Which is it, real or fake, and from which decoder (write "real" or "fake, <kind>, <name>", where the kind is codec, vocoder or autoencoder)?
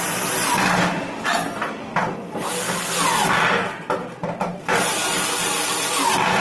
real